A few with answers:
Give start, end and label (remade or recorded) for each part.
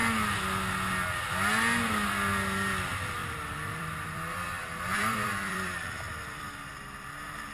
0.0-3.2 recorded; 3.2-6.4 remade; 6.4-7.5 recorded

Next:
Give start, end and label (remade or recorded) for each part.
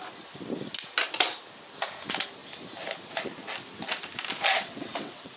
0.0-4.5 recorded; 4.5-5.4 remade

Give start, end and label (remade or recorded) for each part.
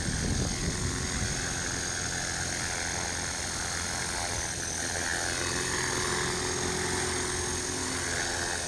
0.0-8.7 recorded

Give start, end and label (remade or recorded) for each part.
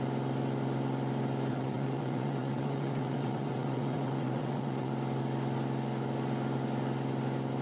0.0-1.5 recorded; 1.5-4.9 remade; 4.9-7.6 recorded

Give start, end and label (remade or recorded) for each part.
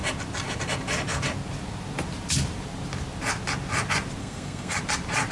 0.0-4.2 recorded; 4.2-4.8 remade; 4.8-5.3 recorded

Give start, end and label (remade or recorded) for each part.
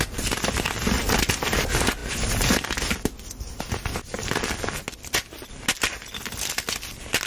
0.0-7.3 recorded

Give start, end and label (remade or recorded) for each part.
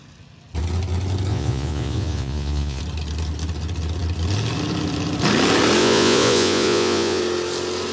0.0-1.3 recorded; 1.3-2.8 remade; 2.8-5.8 recorded; 5.8-7.2 remade; 7.2-7.9 recorded